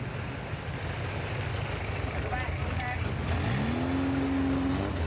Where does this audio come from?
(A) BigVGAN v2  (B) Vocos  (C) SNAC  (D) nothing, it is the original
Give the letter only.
D